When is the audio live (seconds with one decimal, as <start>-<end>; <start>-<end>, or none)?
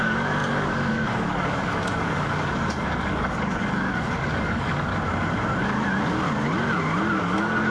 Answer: 4.9-7.2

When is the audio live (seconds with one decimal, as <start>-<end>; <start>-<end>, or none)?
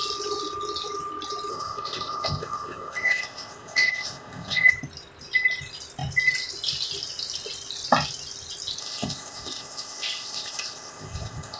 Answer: 0.0-1.5; 4.7-8.8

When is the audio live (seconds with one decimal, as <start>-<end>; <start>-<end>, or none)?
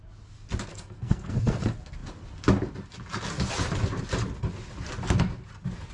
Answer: 0.0-0.7; 1.6-5.9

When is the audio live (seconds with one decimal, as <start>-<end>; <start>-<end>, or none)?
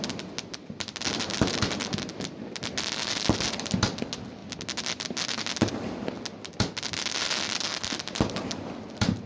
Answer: 0.0-9.3